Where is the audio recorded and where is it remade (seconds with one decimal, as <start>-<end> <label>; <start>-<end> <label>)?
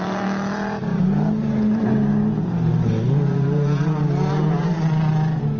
0.0-5.6 recorded